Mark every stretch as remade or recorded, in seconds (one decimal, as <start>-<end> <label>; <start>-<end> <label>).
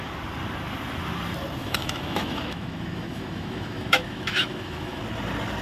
0.0-1.6 recorded; 1.6-5.0 remade; 5.0-5.6 recorded